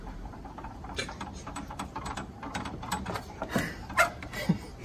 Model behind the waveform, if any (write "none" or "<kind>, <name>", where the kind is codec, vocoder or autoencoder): vocoder, BigVGAN v2